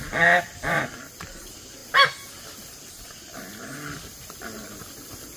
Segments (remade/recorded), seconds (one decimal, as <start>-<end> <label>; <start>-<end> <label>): 0.0-1.8 remade; 1.8-3.8 recorded; 3.8-5.4 remade